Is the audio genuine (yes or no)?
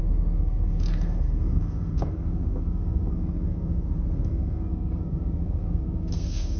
no